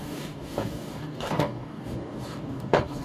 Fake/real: fake